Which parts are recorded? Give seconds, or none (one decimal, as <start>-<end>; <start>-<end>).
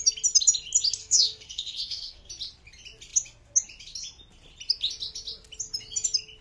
0.0-1.0; 2.3-6.4